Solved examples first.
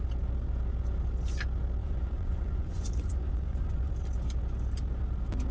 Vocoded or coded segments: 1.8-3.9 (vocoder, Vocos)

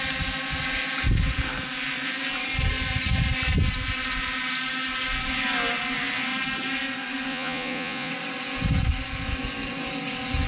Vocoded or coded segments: 7.3-8.1 (vocoder, Vocos)